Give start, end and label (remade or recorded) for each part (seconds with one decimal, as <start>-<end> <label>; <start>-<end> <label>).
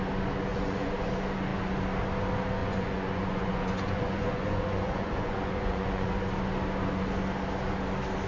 0.0-0.5 recorded; 0.5-1.1 remade; 1.1-2.6 recorded; 2.6-6.1 remade; 6.1-8.3 recorded